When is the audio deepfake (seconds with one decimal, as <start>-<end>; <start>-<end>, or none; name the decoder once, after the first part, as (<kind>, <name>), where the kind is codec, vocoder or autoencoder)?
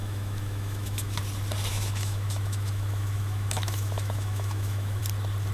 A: 0.0-1.2 (autoencoder, DAC-VAE); 1.7-5.0